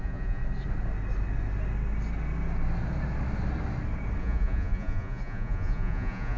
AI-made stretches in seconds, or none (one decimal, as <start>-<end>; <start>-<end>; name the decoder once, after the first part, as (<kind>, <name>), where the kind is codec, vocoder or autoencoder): 0.0-0.4 (vocoder, Vocos); 4.2-6.4